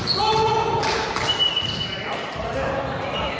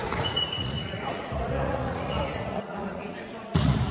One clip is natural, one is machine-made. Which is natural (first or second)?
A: first